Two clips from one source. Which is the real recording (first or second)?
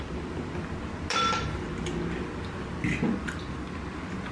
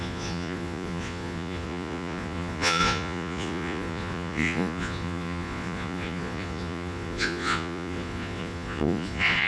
first